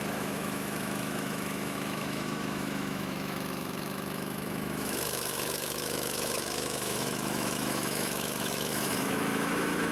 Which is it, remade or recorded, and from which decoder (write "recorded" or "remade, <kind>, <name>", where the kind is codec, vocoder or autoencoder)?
remade, autoencoder, DAC-VAE